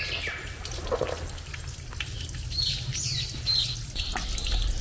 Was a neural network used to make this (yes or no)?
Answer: no